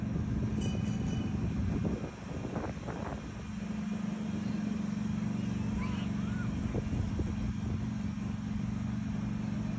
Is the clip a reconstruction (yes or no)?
no